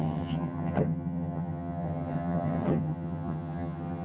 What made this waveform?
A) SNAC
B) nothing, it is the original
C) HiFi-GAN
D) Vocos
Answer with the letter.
C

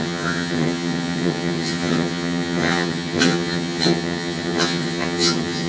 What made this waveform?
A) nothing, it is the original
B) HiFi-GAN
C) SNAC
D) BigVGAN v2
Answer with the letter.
B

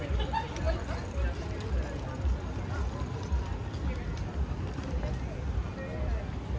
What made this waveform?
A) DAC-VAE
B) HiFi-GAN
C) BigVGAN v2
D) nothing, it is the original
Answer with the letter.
D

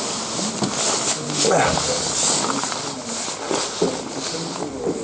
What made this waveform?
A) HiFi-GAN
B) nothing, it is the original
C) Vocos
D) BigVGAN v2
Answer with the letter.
B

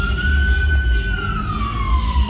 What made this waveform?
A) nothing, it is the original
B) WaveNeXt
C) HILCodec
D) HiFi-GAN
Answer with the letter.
A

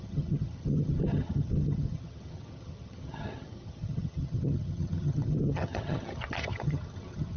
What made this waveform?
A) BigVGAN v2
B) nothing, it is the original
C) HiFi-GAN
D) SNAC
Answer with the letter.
C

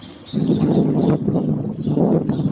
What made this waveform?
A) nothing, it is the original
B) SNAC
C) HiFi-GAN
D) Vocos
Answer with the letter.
C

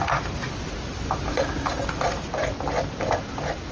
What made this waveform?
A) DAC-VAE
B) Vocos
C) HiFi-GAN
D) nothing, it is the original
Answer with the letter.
D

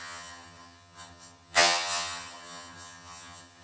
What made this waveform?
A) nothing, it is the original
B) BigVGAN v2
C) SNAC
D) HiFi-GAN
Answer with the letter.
D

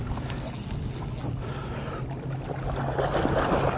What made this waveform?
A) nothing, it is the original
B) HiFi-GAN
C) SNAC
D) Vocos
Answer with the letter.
A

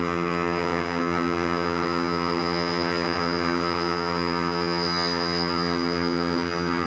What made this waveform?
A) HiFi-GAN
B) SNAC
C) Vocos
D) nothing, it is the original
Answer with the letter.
A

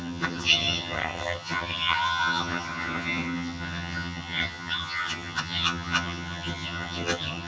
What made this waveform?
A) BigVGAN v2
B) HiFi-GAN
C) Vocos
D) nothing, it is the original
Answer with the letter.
B